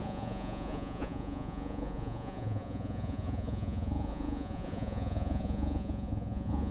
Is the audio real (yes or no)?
no